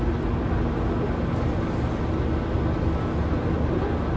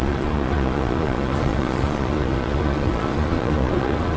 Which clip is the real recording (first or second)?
first